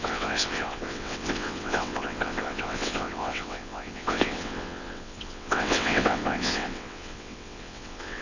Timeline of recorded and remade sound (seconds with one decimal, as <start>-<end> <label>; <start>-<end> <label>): 0.0-8.2 remade

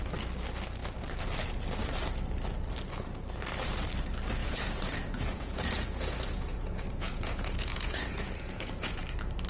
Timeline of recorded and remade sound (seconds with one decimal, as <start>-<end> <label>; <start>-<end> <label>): 0.0-4.4 recorded; 4.4-9.0 remade; 9.0-9.5 recorded

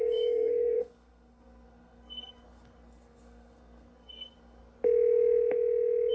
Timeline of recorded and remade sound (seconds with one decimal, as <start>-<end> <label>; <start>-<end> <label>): 0.0-4.6 remade; 4.6-6.1 recorded

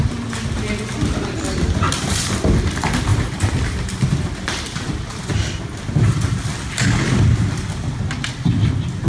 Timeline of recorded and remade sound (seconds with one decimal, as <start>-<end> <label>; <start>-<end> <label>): 0.0-3.1 recorded; 3.1-5.2 remade; 5.2-9.1 recorded

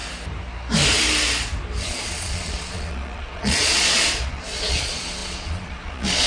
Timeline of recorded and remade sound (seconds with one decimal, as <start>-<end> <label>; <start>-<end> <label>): 0.0-1.8 recorded; 1.8-6.3 remade

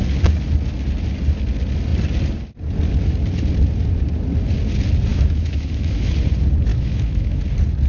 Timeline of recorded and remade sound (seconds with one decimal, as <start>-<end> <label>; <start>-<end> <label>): 0.0-5.1 recorded; 5.1-6.1 remade; 6.1-6.7 recorded; 6.7-7.4 remade; 7.4-7.9 recorded

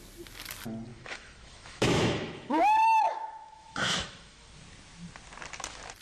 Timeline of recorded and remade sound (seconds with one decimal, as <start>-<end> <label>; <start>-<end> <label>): 0.0-0.9 recorded; 0.9-4.5 remade; 4.5-6.0 recorded

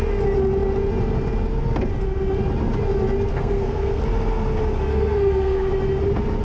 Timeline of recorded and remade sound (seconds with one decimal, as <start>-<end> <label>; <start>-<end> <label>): 0.0-3.3 recorded; 3.3-4.0 remade; 4.0-4.9 recorded; 4.9-5.7 remade; 5.7-6.4 recorded